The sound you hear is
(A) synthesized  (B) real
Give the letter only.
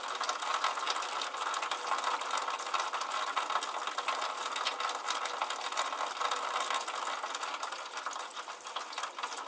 B